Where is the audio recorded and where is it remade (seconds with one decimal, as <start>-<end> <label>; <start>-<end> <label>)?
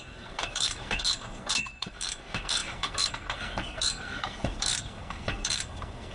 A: 0.0-6.1 remade